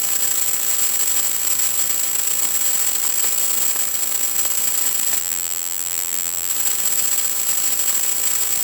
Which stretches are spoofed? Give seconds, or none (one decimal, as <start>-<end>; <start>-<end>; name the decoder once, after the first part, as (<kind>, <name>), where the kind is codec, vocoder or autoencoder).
5.2-6.5 (vocoder, BigVGAN v2)